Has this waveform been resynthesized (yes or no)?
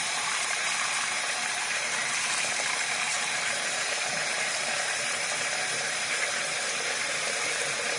yes